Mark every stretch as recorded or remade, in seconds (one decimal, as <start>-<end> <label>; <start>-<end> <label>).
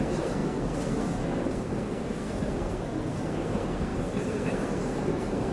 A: 0.0-5.5 remade